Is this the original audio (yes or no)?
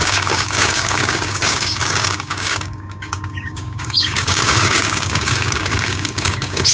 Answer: no